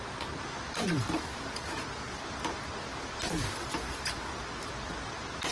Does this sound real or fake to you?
fake